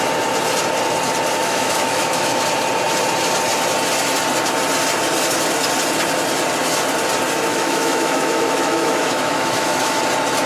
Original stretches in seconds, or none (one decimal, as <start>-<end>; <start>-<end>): 0.0-1.4; 2.4-7.5; 10.0-10.5